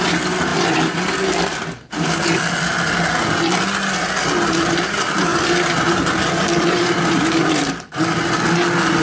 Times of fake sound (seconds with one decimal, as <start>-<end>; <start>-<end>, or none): 5.3-7.9